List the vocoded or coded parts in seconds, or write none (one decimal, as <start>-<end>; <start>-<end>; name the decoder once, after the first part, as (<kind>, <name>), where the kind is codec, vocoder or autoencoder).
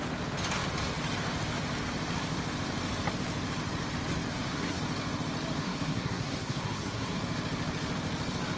4.3-4.8 (codec, SNAC); 5.6-7.2